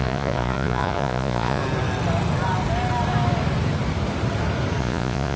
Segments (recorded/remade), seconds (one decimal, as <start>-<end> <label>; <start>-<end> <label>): 0.0-1.6 remade; 1.6-4.8 recorded; 4.8-5.4 remade